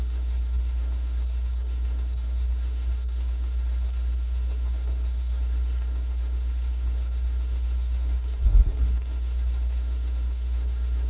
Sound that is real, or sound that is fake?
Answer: fake